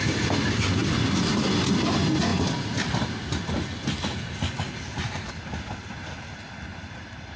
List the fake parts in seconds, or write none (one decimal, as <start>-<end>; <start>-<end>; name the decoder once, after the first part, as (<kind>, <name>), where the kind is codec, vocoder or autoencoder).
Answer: none